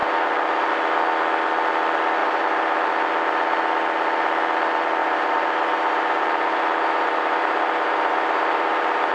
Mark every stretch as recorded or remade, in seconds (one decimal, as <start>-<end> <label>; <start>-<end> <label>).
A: 0.0-0.7 remade; 0.7-2.2 recorded; 2.2-2.9 remade; 2.9-5.0 recorded; 5.0-9.1 remade